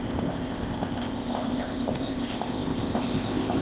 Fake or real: fake